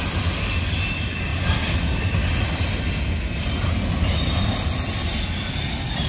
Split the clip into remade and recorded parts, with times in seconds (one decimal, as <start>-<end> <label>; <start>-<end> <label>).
0.0-6.1 recorded